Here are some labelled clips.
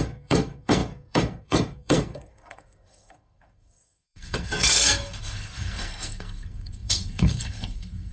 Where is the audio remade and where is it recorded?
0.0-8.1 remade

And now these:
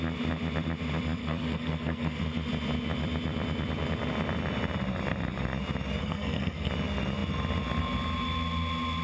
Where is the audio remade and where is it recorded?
0.0-1.2 recorded; 1.2-2.2 remade; 2.2-6.0 recorded; 6.0-6.7 remade; 6.7-9.0 recorded

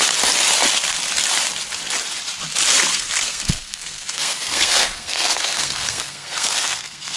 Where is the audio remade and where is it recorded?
0.0-2.9 recorded; 2.9-7.2 remade